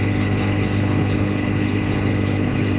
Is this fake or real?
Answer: fake